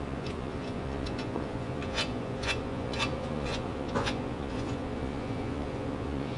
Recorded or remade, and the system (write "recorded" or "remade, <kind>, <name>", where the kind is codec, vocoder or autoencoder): remade, vocoder, Vocos